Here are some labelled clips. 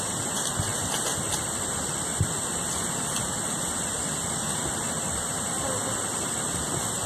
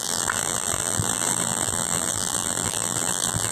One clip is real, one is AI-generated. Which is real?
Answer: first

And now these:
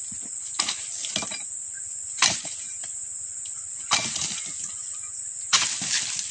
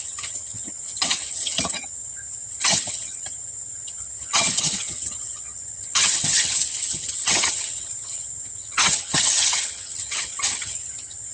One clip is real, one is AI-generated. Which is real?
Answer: first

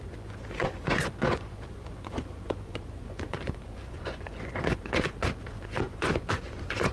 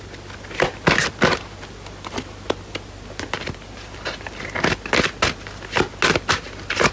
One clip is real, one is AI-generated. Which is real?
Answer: second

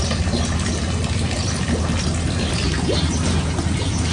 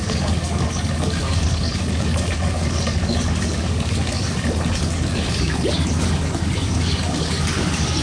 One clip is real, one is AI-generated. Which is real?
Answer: first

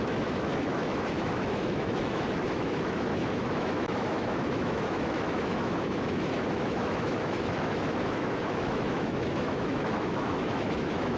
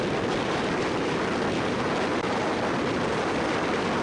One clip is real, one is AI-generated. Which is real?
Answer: second